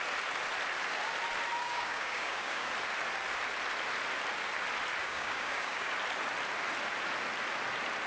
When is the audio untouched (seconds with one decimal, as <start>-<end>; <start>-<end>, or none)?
0.0-1.6; 2.7-5.0; 5.9-8.1